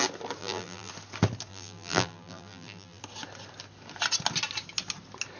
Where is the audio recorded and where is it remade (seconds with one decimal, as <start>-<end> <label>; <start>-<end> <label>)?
0.0-0.4 recorded; 0.4-0.9 remade; 0.9-1.5 recorded; 1.5-3.0 remade; 3.0-5.4 recorded